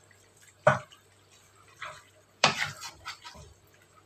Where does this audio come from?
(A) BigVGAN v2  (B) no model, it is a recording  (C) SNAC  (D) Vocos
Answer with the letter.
A